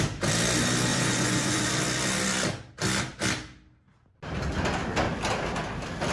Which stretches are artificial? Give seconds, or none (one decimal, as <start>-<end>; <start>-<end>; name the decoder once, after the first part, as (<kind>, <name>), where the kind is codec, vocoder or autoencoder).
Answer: 0.9-1.7 (vocoder, Vocos)